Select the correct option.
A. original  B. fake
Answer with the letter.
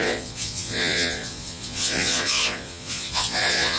B